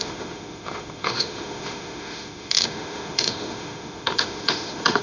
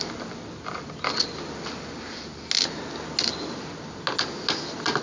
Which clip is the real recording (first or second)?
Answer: second